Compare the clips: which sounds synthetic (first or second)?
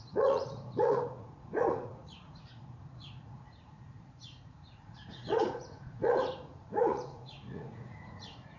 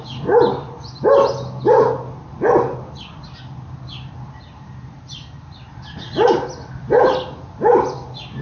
first